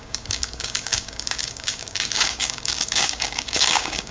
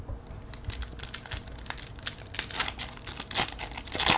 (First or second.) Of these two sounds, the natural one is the second